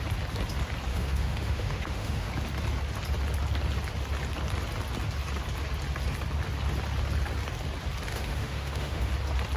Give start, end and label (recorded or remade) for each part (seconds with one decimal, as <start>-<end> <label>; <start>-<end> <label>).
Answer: 0.0-0.9 recorded; 0.9-2.3 remade; 2.3-8.1 recorded; 8.1-9.1 remade; 9.1-9.6 recorded